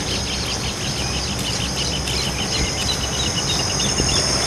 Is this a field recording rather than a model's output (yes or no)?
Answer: yes